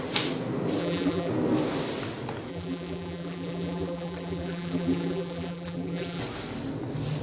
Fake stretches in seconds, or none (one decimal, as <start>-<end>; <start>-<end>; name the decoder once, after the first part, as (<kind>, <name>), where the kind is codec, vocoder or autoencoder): 0.8-1.3 (vocoder, BigVGAN v2); 2.5-6.2